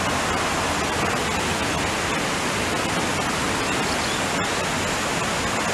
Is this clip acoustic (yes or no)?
yes